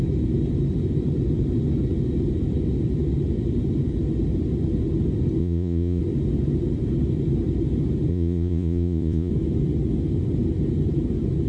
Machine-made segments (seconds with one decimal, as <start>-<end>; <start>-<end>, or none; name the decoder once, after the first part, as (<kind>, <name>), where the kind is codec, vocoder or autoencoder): 5.4-6.0 (vocoder, Vocos); 8.1-9.3